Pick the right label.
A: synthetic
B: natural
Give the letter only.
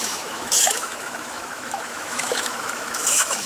A